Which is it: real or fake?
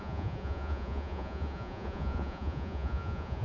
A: fake